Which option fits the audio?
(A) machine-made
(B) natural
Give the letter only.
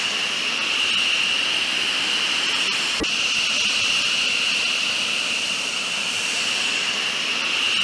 B